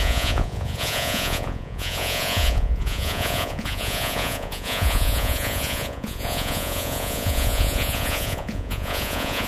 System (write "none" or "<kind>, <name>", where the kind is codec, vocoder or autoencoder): vocoder, Vocos